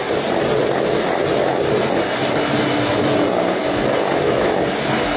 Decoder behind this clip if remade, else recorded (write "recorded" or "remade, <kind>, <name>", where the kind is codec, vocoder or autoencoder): recorded